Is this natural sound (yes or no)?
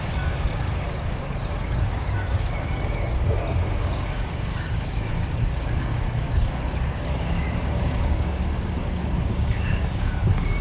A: no